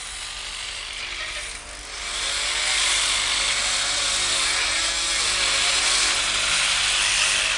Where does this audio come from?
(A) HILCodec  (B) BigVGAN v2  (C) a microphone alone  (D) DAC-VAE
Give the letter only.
C